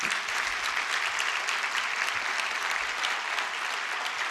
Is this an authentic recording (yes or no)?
yes